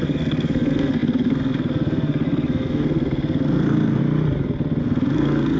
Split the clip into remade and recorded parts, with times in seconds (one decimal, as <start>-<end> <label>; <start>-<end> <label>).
0.0-4.0 remade; 4.0-4.8 recorded; 4.8-5.6 remade